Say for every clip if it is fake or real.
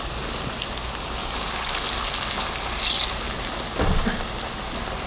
real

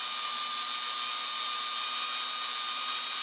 real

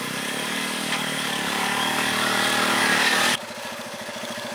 fake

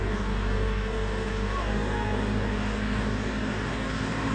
fake